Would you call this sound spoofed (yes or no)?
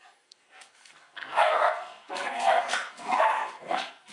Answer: yes